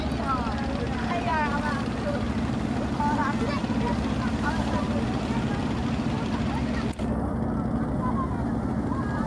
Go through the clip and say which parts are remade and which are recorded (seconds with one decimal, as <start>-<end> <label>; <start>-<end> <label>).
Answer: 0.0-9.3 recorded